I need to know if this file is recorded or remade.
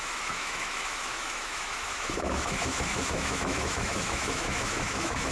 remade